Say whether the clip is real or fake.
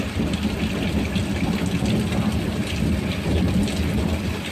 real